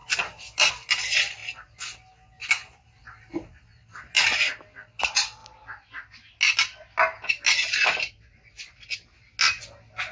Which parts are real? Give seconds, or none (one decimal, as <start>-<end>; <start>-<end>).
0.7-10.1